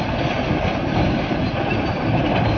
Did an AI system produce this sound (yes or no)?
no